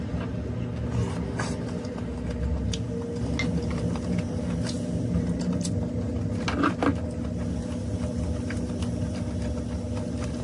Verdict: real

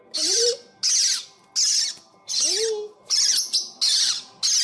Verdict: real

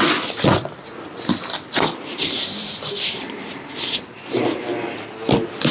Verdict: real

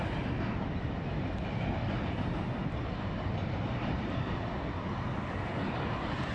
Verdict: real